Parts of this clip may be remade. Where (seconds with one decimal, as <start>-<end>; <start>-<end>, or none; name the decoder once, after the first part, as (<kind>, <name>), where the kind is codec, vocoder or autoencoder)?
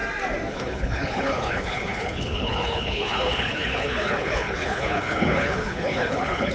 0.5-6.5 (codec, HILCodec)